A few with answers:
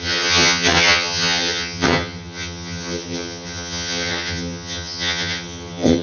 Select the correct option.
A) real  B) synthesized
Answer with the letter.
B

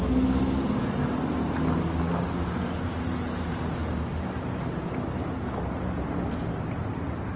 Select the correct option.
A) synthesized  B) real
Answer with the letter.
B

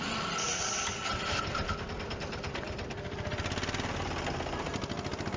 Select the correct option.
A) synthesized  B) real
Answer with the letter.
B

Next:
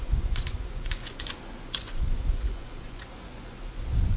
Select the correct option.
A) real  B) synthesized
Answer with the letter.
B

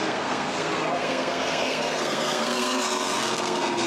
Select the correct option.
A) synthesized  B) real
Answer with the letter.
A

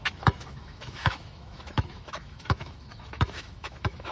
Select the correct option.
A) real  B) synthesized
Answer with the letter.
B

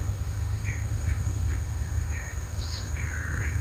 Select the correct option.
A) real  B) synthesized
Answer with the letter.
B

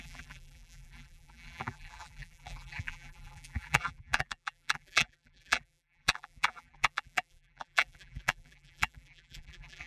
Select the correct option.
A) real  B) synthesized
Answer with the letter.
B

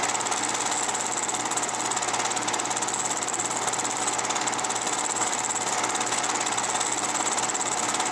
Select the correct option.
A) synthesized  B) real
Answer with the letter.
B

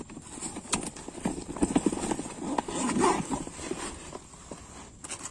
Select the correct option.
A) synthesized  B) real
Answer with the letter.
B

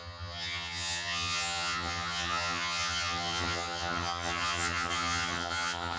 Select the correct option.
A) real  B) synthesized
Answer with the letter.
B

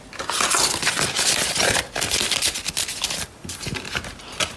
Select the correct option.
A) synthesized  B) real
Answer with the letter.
B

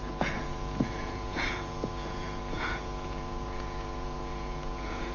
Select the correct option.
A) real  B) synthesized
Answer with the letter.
B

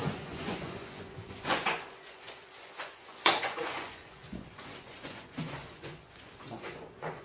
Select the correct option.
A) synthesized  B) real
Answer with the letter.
A